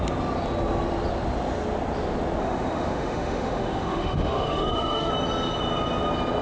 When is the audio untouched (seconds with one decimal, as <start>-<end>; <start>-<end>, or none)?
0.0-2.4; 5.1-6.4

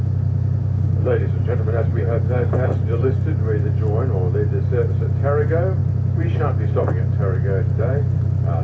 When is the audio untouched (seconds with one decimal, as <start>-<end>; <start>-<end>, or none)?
0.0-0.6; 1.2-8.6

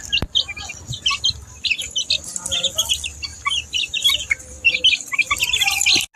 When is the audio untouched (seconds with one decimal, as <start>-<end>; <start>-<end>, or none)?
0.0-6.2